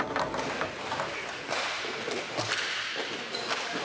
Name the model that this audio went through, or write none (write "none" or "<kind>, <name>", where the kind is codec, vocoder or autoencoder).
none